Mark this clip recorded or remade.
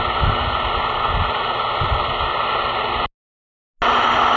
recorded